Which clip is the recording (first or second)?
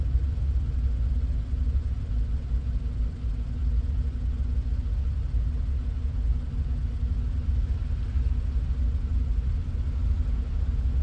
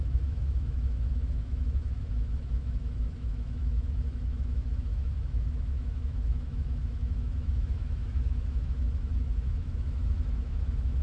first